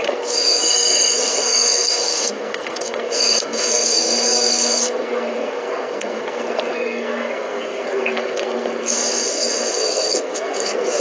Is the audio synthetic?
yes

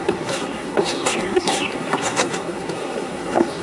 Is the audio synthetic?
yes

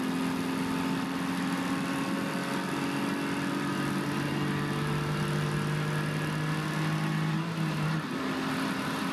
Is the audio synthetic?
no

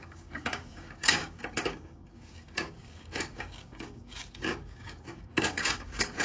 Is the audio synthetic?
yes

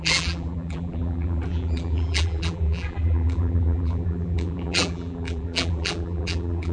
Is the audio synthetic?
yes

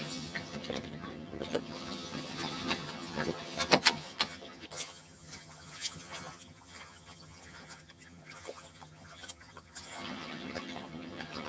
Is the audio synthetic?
yes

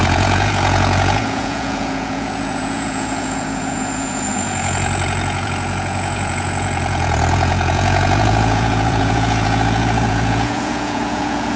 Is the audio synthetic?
yes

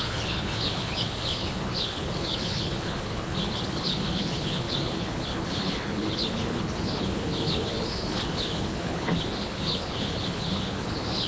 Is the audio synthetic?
yes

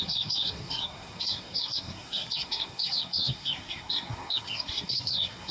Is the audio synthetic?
yes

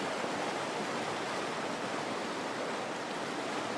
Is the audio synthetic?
no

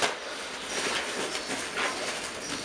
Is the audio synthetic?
no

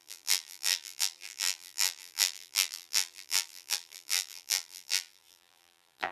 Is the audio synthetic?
yes